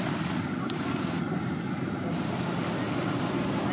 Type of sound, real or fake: real